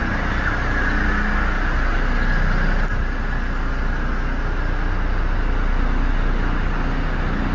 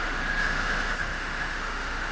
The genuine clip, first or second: first